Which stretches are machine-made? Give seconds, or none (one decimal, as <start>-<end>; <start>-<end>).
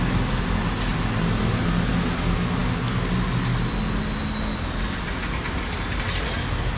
none